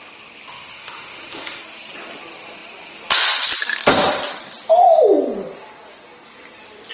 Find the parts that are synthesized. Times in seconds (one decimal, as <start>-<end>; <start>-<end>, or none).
0.5-1.6